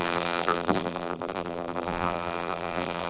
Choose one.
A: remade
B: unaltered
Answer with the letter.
A